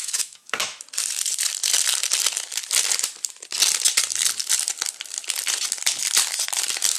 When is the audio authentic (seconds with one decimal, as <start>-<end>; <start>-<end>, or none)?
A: 0.8-7.0